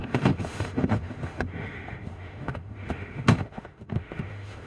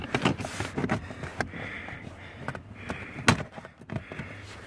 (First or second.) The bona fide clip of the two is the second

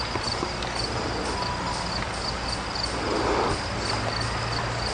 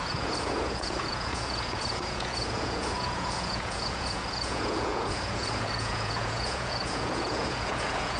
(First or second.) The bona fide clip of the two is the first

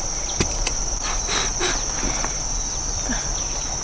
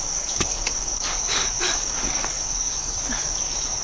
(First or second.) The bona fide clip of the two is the first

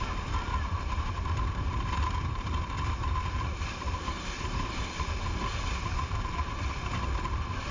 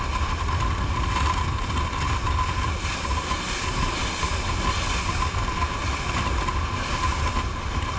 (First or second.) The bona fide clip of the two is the second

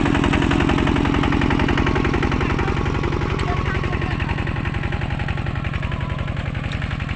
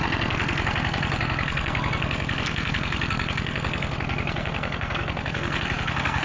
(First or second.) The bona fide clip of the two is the first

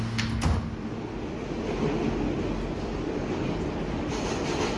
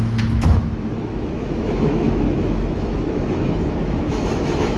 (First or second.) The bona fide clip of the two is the first